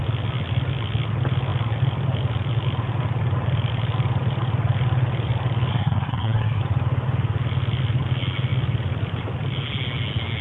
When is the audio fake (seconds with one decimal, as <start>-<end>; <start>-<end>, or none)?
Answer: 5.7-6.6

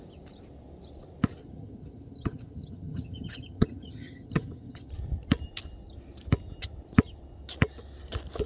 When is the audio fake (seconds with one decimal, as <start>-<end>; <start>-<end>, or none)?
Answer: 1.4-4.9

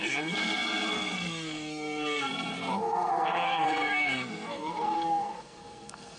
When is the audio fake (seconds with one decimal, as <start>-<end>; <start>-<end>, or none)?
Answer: 0.0-6.2

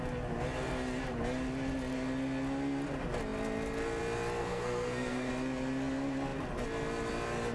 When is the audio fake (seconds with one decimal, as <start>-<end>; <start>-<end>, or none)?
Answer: 4.4-5.3

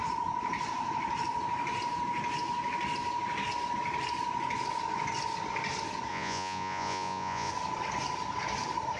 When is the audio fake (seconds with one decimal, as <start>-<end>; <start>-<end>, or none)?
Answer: 6.1-7.5

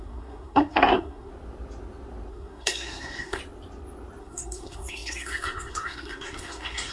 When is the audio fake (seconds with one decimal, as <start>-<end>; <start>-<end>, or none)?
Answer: 0.0-1.3; 2.3-3.4; 4.2-6.9